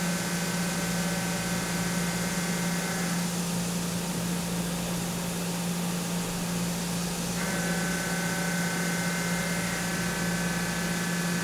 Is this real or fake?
real